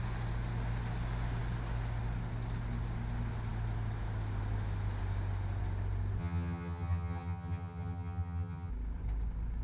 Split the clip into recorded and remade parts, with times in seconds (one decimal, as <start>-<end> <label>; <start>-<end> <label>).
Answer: 0.0-6.2 recorded; 6.2-8.7 remade; 8.7-9.6 recorded

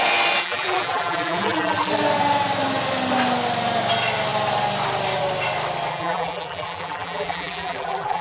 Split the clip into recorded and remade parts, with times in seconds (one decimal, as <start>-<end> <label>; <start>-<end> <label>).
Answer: 0.0-0.4 recorded; 0.4-1.9 remade; 1.9-5.9 recorded; 5.9-8.2 remade